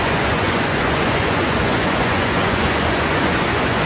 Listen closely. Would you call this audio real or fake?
fake